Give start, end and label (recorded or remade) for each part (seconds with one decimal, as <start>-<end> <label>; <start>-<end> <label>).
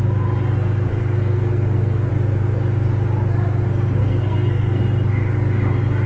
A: 0.0-0.9 recorded; 0.9-2.1 remade; 2.1-4.0 recorded; 4.0-4.8 remade; 4.8-6.1 recorded